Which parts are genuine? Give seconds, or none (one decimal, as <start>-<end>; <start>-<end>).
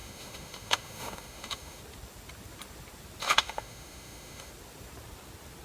1.8-3.2; 4.5-5.6